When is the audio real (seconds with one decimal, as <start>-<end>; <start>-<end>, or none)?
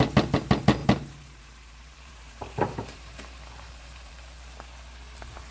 0.0-0.8; 4.1-5.5